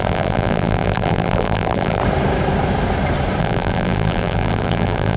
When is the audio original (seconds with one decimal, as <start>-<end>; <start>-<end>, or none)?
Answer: 2.0-3.4